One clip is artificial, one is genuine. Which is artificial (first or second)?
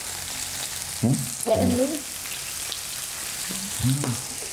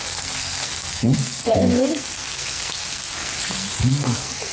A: second